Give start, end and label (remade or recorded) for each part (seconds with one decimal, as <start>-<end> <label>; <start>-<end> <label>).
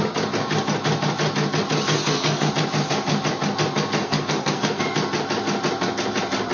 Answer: 0.0-2.0 recorded; 2.0-2.5 remade; 2.5-4.0 recorded; 4.0-4.8 remade; 4.8-6.5 recorded